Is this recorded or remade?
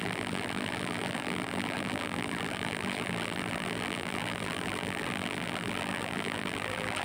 remade